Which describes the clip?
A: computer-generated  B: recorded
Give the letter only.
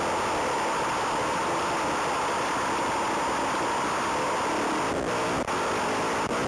B